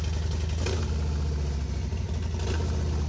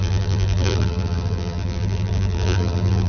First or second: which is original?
first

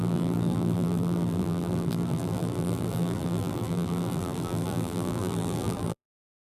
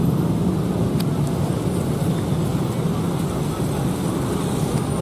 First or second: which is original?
second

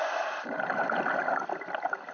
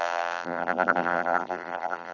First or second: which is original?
first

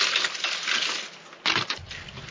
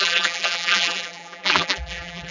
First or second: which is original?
first